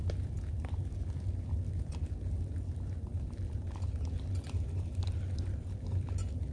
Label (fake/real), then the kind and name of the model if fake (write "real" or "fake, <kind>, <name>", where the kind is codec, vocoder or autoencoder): real